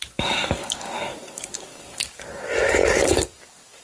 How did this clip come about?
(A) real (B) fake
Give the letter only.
B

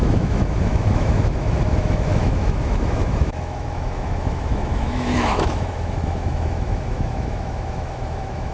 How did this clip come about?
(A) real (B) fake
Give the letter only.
B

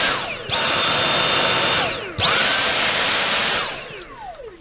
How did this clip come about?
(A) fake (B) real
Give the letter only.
B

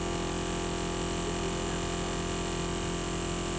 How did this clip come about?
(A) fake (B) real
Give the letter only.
B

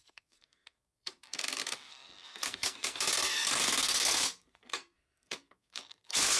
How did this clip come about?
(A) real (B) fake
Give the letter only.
B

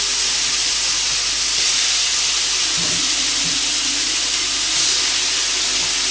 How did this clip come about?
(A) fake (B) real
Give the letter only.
B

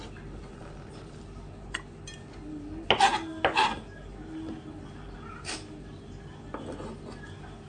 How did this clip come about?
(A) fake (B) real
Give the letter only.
B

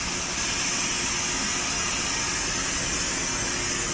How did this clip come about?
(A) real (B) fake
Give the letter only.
A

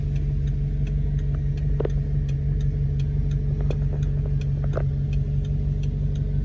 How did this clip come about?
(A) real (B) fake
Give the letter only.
A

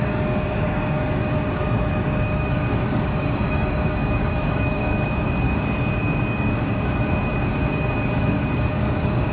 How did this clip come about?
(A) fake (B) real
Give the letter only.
A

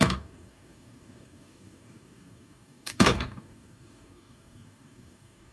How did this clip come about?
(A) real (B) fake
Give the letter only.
B